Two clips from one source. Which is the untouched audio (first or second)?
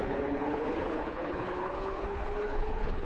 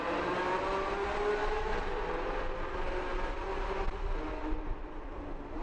second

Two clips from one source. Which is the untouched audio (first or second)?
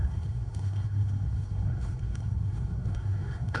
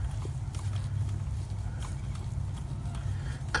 second